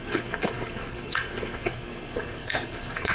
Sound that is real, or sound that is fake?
fake